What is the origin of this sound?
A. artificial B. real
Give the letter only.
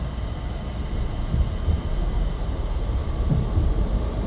A